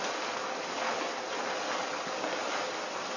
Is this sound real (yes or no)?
yes